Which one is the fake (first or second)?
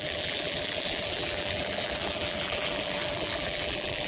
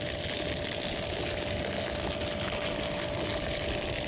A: first